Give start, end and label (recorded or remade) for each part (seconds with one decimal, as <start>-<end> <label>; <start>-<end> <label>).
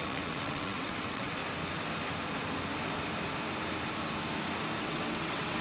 0.0-1.4 remade; 1.4-4.8 recorded; 4.8-5.6 remade